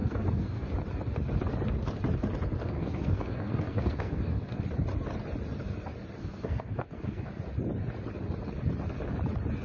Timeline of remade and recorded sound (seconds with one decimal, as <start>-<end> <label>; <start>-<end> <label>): 0.0-0.7 remade; 0.7-2.6 recorded; 2.6-4.6 remade; 4.6-6.2 recorded; 6.2-7.3 remade; 7.3-9.6 recorded

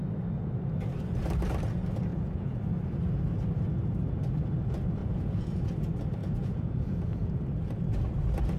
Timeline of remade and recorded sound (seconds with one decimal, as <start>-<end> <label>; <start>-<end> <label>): 0.0-2.1 recorded; 2.1-2.6 remade; 2.6-5.0 recorded; 5.0-5.7 remade; 5.7-6.2 recorded; 6.2-7.3 remade; 7.3-8.6 recorded